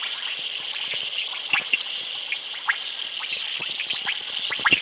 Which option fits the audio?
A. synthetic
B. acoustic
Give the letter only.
B